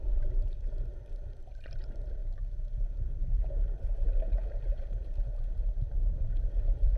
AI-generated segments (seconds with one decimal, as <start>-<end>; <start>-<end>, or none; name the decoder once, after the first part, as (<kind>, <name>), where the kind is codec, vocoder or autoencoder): 0.0-0.9 (vocoder, BigVGAN v2); 1.4-7.0